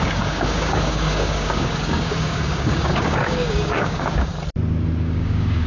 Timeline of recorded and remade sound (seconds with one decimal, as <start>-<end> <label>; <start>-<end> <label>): 0.0-4.3 remade; 4.3-5.0 recorded; 5.0-5.7 remade